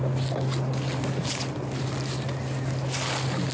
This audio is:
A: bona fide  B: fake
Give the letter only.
A